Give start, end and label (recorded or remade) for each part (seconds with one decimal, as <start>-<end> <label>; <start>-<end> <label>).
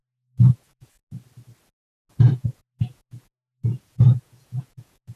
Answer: 0.0-1.0 remade; 1.0-2.3 recorded; 2.3-5.2 remade